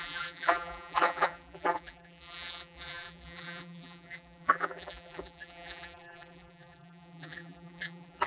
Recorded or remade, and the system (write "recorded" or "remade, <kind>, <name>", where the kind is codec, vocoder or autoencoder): remade, vocoder, BigVGAN v2